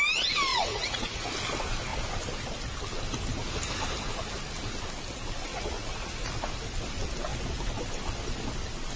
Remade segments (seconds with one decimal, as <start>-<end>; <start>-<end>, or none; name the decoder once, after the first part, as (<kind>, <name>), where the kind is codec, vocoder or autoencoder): 0.5-1.3 (vocoder, Vocos); 5.5-6.2